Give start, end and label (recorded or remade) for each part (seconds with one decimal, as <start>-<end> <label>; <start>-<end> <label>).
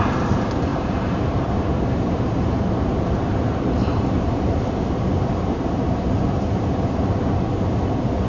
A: 0.0-8.3 remade